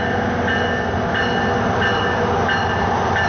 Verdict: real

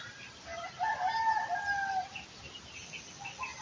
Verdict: real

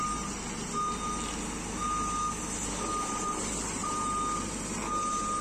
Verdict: real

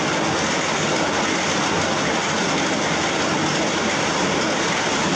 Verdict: real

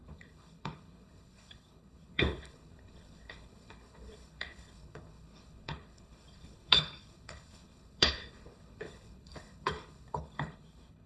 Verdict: fake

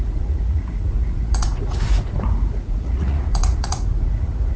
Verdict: fake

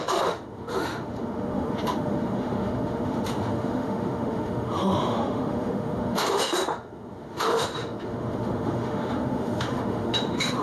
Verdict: fake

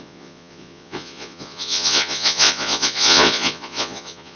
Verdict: fake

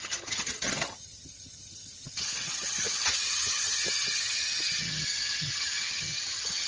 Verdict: fake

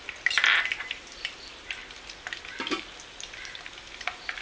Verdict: real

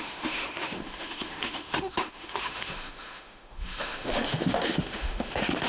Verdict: fake